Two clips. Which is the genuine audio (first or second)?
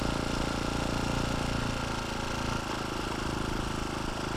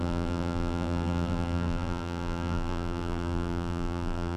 first